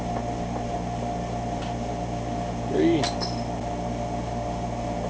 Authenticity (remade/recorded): recorded